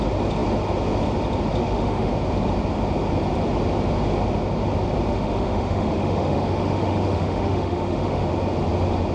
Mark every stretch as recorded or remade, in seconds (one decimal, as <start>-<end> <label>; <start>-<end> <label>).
0.0-1.6 recorded; 1.6-2.1 remade; 2.1-5.1 recorded; 5.1-8.2 remade; 8.2-9.1 recorded

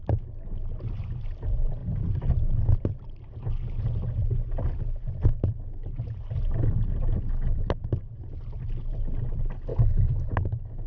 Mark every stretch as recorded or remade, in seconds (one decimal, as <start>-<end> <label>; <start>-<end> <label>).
0.0-9.7 recorded; 9.7-10.3 remade; 10.3-10.9 recorded

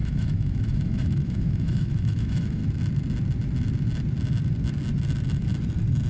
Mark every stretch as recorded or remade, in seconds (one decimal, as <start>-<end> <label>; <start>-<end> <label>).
0.0-2.6 remade; 2.6-6.1 recorded

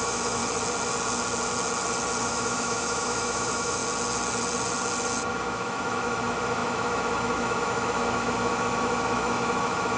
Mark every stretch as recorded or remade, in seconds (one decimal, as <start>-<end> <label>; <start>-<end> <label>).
0.0-0.4 remade; 0.4-2.2 recorded; 2.2-3.8 remade; 3.8-5.3 recorded; 5.3-10.0 remade

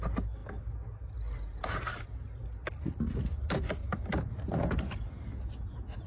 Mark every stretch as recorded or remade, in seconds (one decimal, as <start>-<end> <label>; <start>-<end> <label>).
0.0-6.1 recorded

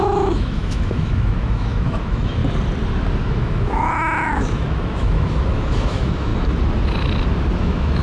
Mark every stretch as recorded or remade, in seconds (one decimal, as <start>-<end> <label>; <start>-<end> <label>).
0.0-2.4 remade; 2.4-3.2 recorded; 3.2-6.3 remade; 6.3-7.6 recorded; 7.6-8.0 remade

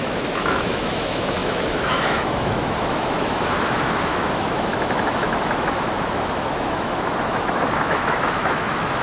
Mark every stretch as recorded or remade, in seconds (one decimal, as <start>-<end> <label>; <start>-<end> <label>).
0.0-9.0 remade